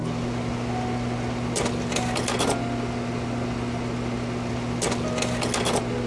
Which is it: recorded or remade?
recorded